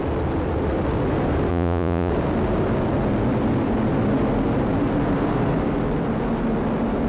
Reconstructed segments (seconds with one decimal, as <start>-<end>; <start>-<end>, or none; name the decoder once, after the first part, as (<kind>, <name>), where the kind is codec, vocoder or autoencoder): 1.5-2.1 (vocoder, Vocos)